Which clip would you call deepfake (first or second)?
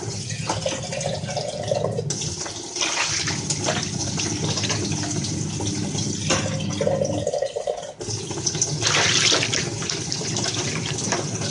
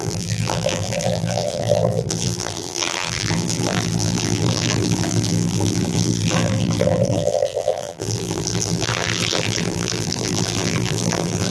second